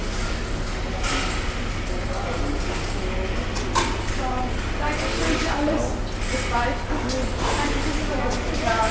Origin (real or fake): real